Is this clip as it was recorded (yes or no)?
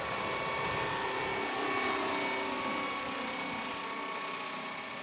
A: yes